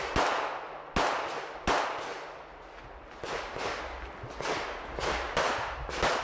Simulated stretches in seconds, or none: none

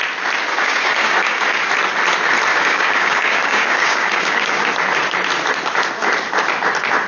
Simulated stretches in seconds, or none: 0.5-1.7 (codec, DAC); 2.5-4.6